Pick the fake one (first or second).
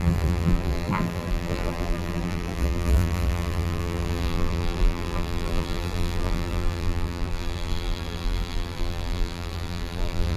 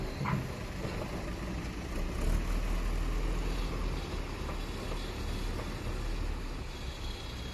first